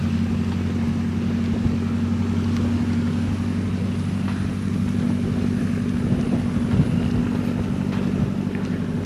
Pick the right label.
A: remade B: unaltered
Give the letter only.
B